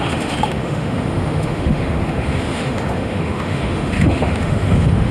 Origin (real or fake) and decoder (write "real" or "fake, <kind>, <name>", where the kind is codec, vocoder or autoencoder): fake, autoencoder, DAC-VAE